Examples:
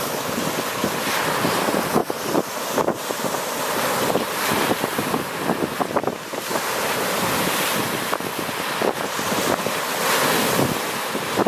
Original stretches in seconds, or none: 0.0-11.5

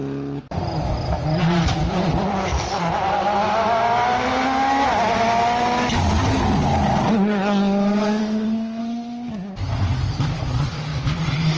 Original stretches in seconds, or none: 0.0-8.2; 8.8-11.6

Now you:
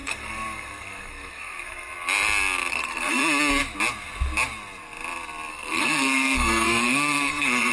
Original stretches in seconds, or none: 1.9-2.7; 3.2-5.5

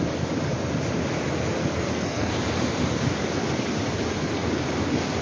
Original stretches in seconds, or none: 0.0-1.6; 2.3-5.2